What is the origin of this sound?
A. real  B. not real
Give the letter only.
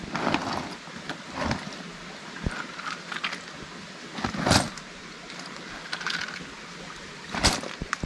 A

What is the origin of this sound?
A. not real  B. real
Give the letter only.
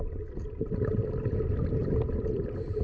B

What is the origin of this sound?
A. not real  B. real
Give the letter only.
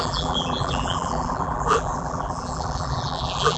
A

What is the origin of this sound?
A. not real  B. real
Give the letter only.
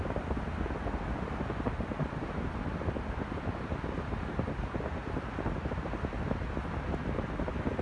B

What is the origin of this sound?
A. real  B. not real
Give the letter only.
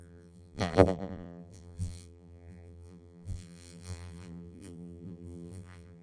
B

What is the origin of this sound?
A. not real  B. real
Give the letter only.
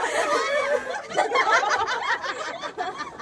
A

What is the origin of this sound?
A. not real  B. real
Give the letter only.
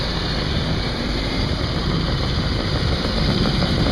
A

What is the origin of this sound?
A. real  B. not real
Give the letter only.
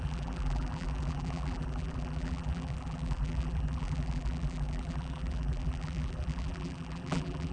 B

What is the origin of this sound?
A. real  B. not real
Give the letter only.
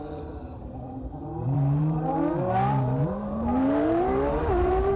B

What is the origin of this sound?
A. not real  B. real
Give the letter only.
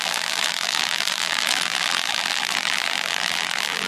A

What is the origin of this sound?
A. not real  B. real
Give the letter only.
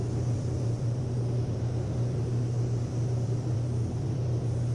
A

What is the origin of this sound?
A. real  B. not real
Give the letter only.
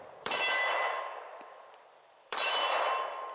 B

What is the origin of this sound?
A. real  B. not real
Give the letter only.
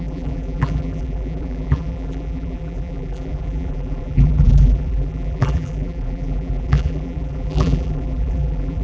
B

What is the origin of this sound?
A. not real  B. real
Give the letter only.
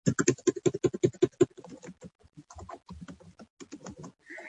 B